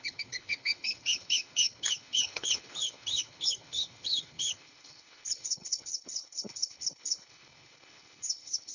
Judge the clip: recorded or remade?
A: remade